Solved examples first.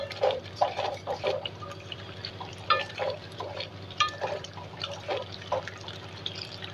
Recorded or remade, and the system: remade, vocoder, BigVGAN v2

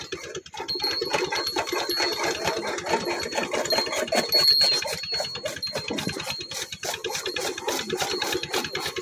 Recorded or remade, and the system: recorded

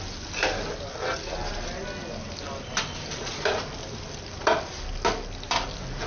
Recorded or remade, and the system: recorded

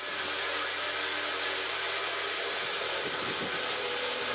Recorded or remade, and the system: recorded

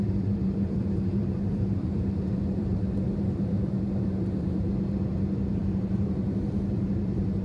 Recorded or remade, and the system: remade, vocoder, BigVGAN v2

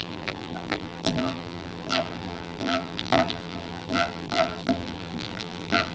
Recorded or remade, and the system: remade, vocoder, BigVGAN v2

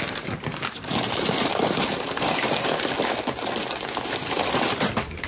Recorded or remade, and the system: remade, vocoder, BigVGAN v2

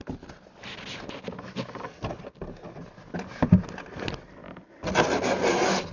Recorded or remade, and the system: recorded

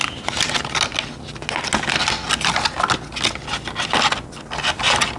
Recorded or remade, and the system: recorded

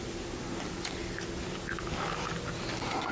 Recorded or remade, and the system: recorded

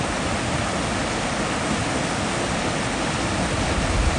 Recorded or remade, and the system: recorded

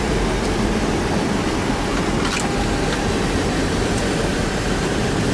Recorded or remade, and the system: remade, vocoder, BigVGAN v2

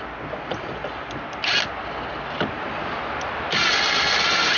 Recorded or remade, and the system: recorded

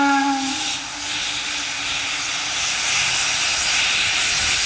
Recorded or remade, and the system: recorded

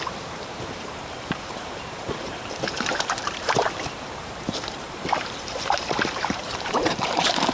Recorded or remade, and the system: remade, vocoder, BigVGAN v2